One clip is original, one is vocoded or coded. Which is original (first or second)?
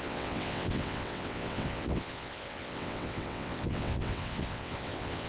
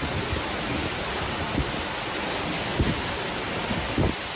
second